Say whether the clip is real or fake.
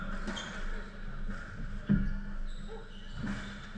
real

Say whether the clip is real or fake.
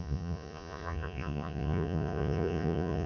fake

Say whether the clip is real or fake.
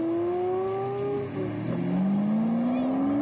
real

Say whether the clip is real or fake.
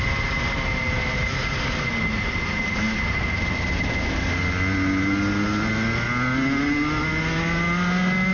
real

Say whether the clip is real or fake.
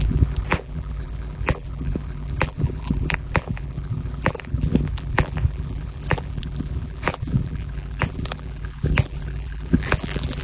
fake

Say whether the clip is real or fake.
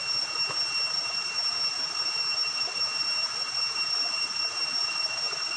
real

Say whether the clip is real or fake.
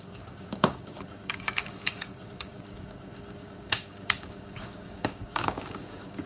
fake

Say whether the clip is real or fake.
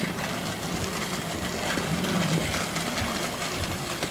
real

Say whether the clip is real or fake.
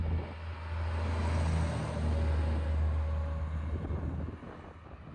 real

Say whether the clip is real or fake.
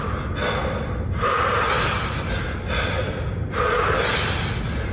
real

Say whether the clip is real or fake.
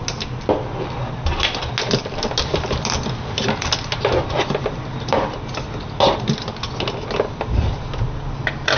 real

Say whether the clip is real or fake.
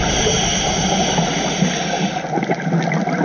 real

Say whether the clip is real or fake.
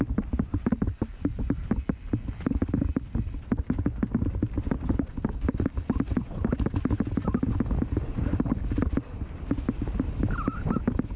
real